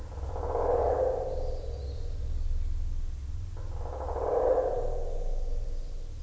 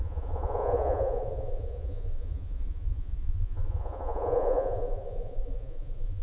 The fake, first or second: second